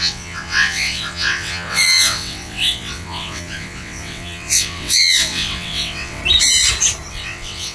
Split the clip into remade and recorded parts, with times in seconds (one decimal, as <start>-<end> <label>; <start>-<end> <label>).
0.0-6.2 remade; 6.2-7.1 recorded; 7.1-7.7 remade